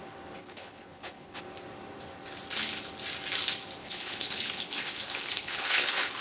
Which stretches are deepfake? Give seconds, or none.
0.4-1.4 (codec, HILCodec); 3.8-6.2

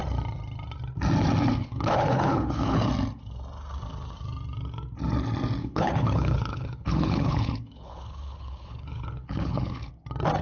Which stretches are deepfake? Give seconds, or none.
1.6-2.9 (codec, HILCodec); 5.6-9.9